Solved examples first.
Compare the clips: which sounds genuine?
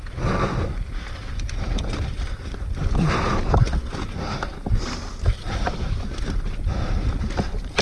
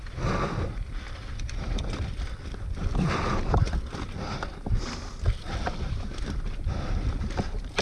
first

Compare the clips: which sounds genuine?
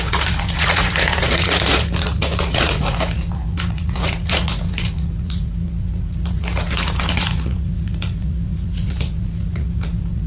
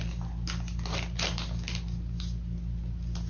second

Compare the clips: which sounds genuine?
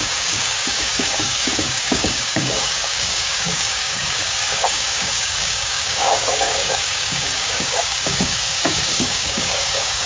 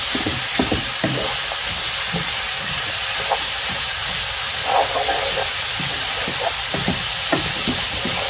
second